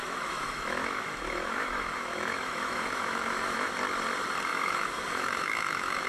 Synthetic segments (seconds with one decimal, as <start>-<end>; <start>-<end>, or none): 0.0-3.7; 4.5-6.1